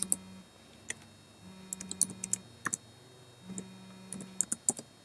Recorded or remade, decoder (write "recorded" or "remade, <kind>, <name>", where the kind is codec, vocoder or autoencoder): recorded